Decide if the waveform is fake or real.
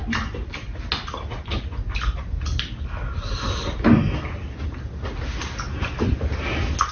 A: real